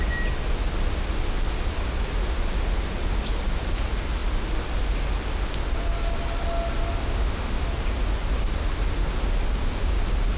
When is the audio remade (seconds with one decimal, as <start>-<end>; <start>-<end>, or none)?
7.0-7.6